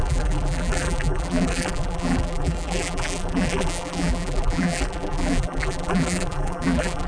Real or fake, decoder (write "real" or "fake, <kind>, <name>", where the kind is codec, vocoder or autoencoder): fake, vocoder, BigVGAN v2